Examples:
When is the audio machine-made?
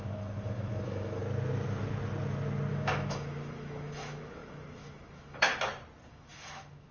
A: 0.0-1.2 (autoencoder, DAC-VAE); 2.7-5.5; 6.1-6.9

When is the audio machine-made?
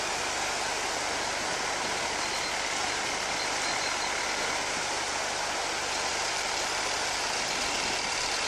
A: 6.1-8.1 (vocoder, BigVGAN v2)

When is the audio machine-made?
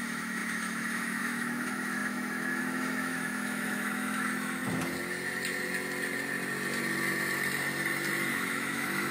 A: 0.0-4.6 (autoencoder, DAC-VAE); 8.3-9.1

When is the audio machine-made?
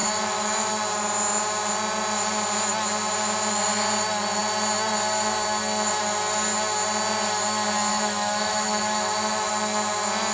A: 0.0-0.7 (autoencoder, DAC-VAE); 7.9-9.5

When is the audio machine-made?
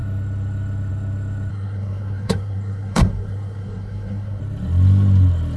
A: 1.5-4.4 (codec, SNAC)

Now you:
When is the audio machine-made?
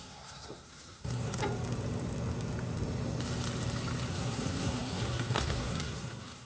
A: 0.0-1.4 (codec, SNAC); 4.1-6.5